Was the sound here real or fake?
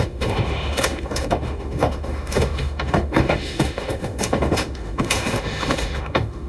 fake